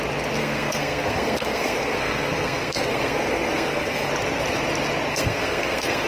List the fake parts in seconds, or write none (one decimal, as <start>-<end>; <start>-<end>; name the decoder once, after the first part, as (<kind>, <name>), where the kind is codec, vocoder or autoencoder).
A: 0.4-4.1 (codec, SNAC); 5.1-6.1